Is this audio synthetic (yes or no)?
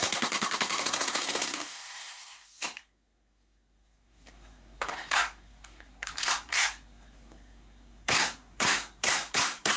yes